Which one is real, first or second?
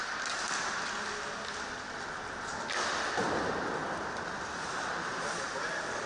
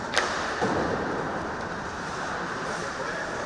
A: first